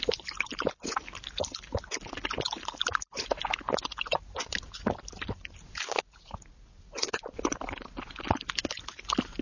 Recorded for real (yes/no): yes